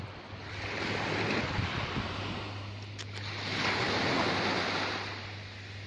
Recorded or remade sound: recorded